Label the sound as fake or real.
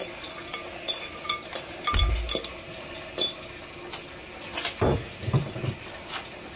real